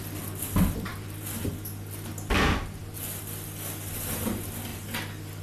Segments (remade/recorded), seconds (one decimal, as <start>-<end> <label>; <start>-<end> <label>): 0.0-0.9 recorded; 0.9-1.5 remade; 1.5-5.4 recorded